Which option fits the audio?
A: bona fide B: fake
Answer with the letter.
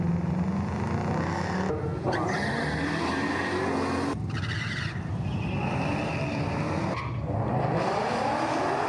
A